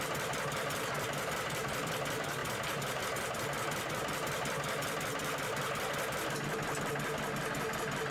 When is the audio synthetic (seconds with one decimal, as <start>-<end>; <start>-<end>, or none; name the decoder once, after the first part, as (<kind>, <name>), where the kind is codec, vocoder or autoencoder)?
2.4-3.0 (vocoder, BigVGAN v2)